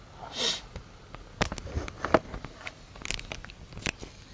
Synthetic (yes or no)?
no